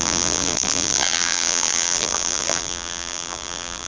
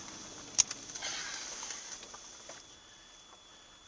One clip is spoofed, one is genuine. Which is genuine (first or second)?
second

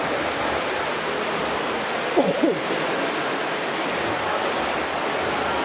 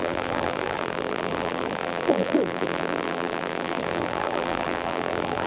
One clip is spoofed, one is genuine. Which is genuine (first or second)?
first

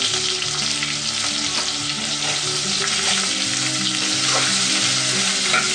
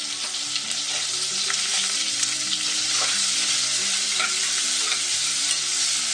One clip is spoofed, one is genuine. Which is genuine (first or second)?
first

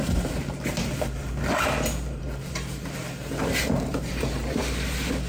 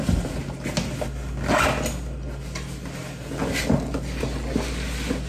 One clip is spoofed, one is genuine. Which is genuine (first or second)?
second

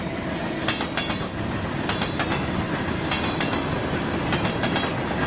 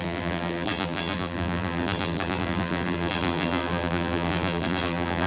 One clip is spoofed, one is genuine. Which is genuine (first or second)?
first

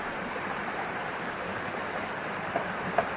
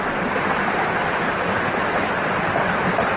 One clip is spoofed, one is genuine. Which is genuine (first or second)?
second